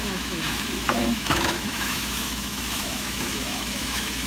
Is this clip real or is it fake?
fake